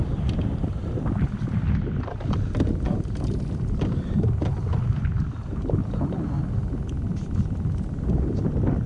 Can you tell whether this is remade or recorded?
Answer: recorded